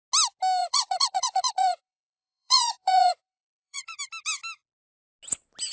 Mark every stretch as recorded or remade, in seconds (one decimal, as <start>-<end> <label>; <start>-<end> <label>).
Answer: 0.0-0.6 recorded; 0.6-4.0 remade; 4.0-5.7 recorded